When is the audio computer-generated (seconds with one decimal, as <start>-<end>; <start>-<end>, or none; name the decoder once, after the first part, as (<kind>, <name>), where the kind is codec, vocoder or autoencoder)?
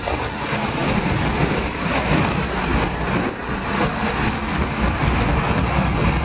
none